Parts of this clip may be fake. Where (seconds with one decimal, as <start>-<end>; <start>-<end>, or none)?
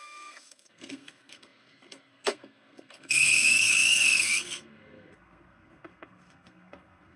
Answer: 0.0-7.2